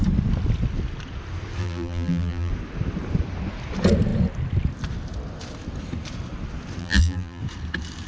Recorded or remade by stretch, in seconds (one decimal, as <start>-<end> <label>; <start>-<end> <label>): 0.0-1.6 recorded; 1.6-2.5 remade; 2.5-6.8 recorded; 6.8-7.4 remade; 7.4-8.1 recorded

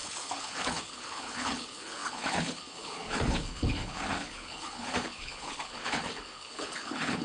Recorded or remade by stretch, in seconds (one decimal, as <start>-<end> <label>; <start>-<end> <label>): 0.0-7.2 remade

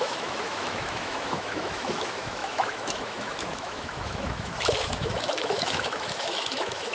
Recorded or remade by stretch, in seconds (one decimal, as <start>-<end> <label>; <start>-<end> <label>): 0.0-6.9 remade

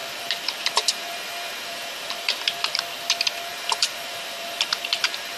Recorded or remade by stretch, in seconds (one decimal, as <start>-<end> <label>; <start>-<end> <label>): 0.0-2.8 remade; 2.8-3.5 recorded; 3.5-5.4 remade